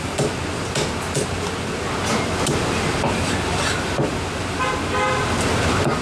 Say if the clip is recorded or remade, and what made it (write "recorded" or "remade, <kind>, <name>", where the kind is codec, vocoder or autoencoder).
recorded